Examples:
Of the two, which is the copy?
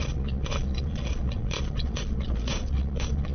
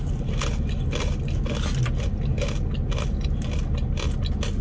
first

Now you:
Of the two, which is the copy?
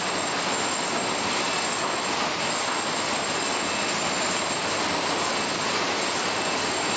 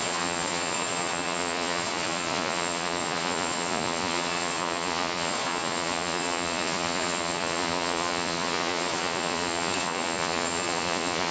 second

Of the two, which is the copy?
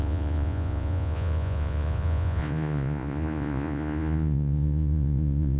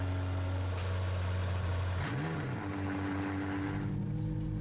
first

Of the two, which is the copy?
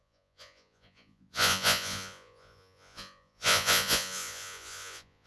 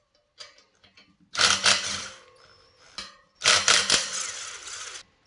first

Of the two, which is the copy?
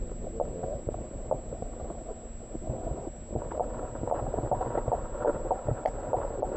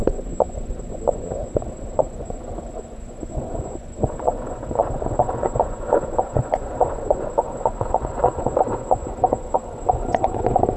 second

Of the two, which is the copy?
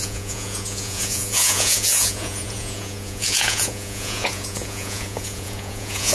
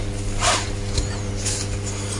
first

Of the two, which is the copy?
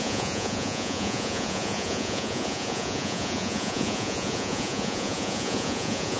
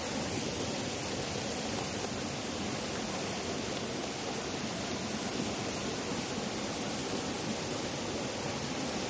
first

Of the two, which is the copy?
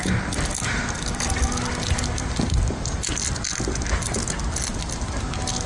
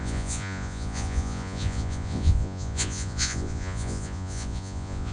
second